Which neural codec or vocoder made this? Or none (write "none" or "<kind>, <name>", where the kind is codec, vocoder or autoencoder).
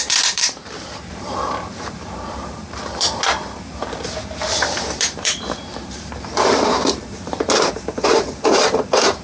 vocoder, BigVGAN v2